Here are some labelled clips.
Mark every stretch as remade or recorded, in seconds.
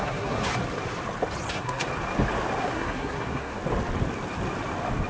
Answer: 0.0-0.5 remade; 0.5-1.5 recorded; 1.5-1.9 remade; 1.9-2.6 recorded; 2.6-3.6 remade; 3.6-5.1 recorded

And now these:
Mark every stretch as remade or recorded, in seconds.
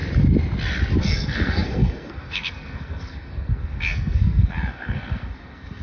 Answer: 0.0-1.0 recorded; 1.0-5.8 remade